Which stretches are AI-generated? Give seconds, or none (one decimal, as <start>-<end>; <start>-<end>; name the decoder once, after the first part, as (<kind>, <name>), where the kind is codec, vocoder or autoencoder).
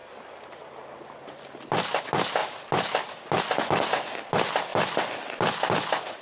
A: none